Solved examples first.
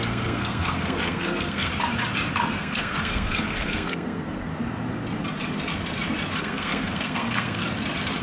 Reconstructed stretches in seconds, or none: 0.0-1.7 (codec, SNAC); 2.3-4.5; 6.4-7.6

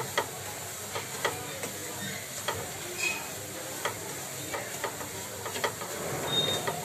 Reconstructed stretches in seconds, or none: none

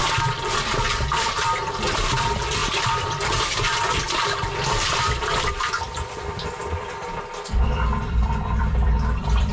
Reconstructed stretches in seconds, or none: 1.0-9.5 (vocoder, BigVGAN v2)

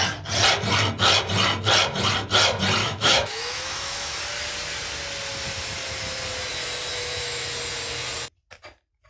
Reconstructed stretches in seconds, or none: 2.8-4.2 (autoencoder, DAC-VAE); 6.9-7.5

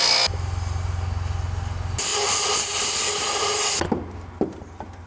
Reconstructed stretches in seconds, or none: none

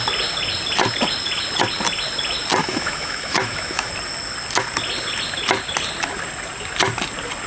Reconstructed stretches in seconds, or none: 2.6-3.9 (autoencoder, DAC-VAE)

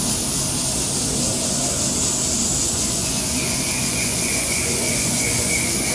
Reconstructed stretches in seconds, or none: 2.6-5.9 (vocoder, Vocos)